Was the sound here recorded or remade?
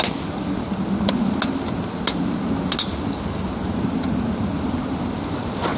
recorded